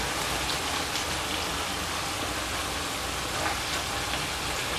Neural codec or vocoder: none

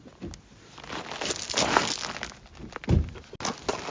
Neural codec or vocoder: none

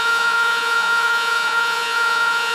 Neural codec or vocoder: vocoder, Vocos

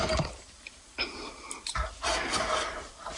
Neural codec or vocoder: none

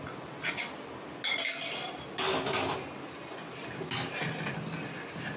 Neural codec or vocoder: none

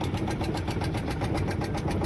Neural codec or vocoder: none